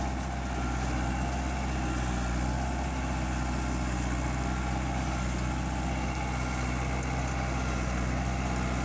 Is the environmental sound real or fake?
real